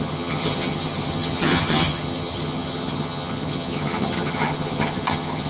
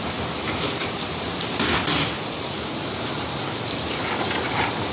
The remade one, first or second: first